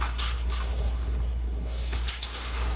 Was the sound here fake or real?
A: fake